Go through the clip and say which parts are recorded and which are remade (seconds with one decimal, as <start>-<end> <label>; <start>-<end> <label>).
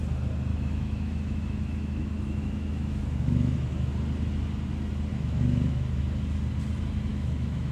0.0-0.5 recorded; 0.5-3.9 remade; 3.9-5.1 recorded; 5.1-6.0 remade; 6.0-7.1 recorded; 7.1-7.7 remade